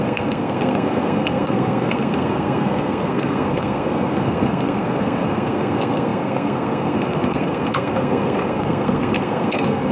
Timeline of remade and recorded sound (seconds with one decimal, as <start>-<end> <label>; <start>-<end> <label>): 0.0-9.9 remade